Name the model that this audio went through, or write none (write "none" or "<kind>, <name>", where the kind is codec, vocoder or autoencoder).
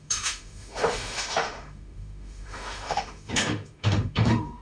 autoencoder, DAC-VAE